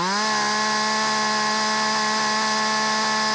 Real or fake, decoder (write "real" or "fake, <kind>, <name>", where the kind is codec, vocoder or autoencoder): real